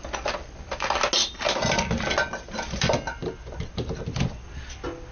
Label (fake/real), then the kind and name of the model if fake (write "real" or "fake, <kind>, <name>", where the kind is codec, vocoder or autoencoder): real